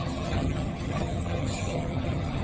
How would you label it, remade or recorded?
remade